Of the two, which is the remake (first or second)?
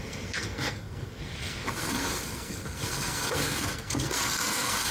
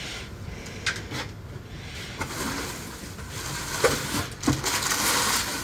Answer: first